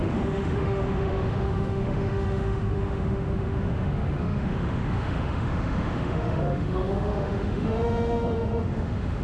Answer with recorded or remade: remade